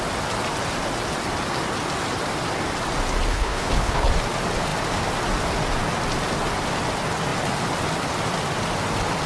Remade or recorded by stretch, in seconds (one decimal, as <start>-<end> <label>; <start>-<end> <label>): 0.0-3.3 recorded; 3.3-4.1 remade; 4.1-9.3 recorded